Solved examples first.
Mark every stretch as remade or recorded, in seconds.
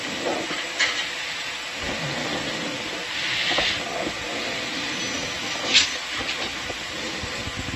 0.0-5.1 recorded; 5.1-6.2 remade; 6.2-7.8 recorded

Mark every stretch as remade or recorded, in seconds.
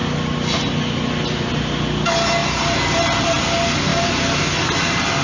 0.0-2.4 recorded; 2.4-3.4 remade; 3.4-3.9 recorded; 3.9-4.4 remade; 4.4-5.2 recorded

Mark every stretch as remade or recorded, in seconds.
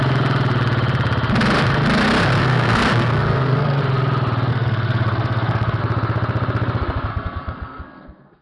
0.0-2.4 recorded; 2.4-3.8 remade; 3.8-4.5 recorded; 4.5-5.8 remade; 5.8-7.1 recorded; 7.1-8.4 remade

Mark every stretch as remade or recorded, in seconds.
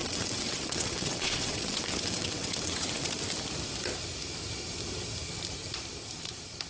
0.0-3.1 remade; 3.1-6.7 recorded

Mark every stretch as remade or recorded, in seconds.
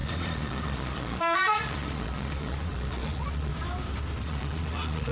0.0-3.5 remade; 3.5-4.2 recorded; 4.2-5.1 remade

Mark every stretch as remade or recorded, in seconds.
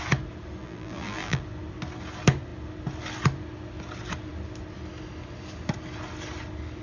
0.0-0.6 recorded; 0.6-1.4 remade; 1.4-6.8 recorded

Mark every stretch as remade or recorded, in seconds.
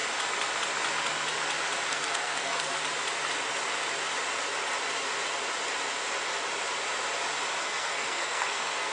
0.0-1.9 recorded; 1.9-2.8 remade; 2.8-7.6 recorded; 7.6-8.9 remade